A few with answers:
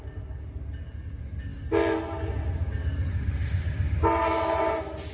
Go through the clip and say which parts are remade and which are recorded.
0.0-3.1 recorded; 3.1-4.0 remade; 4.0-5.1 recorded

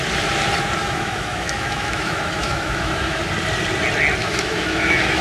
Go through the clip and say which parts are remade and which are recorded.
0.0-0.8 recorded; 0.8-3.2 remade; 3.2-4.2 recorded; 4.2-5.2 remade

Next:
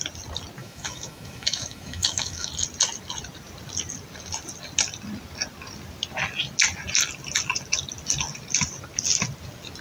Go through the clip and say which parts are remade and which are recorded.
0.0-0.6 recorded; 0.6-2.5 remade; 2.5-9.8 recorded